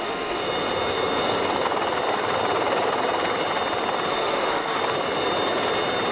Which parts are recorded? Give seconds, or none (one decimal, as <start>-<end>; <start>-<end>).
0.4-4.1; 4.8-6.1